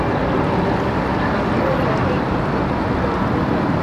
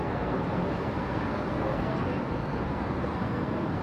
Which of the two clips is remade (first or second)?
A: second